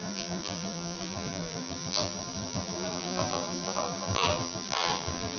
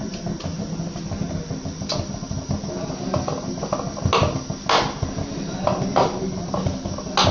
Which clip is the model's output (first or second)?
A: first